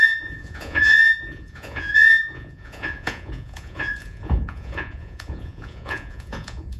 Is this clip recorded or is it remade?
remade